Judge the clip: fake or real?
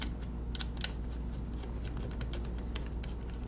real